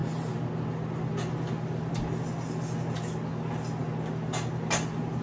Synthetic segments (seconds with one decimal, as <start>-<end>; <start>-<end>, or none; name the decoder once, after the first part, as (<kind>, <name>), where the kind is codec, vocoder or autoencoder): none